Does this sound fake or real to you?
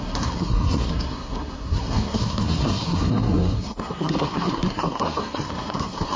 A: fake